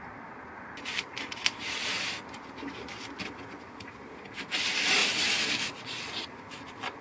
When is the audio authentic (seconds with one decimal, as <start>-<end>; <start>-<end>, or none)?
0.0-7.0